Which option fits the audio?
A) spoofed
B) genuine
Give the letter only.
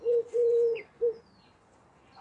A